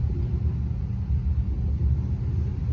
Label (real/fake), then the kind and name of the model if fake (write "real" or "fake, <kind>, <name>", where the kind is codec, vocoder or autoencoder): real